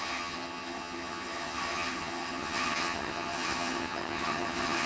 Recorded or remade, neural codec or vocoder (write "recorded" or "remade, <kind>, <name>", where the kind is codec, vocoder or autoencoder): remade, vocoder, HiFi-GAN